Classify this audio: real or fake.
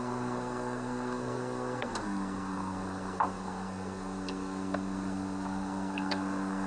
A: fake